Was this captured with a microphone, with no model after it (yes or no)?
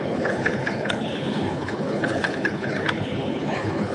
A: no